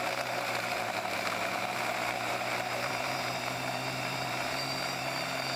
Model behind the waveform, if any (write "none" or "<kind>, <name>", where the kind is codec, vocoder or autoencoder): vocoder, BigVGAN v2